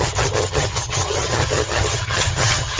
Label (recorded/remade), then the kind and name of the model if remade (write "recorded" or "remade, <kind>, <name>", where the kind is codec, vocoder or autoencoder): remade, vocoder, HiFi-GAN